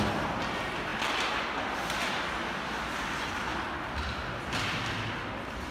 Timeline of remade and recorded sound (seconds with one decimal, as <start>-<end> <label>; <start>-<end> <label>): 0.0-5.7 recorded